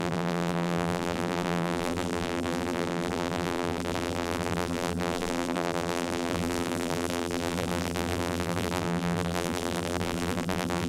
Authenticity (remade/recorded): remade